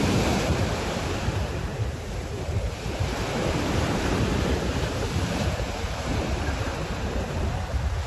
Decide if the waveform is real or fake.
fake